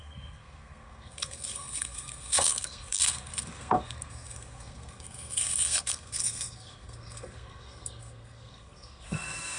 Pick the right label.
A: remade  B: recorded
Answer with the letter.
A